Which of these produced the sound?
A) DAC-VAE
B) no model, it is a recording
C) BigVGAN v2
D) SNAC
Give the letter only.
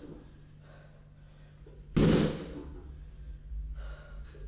B